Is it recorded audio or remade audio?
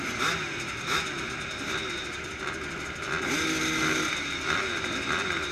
recorded